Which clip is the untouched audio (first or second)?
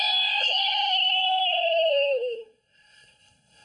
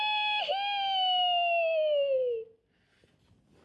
second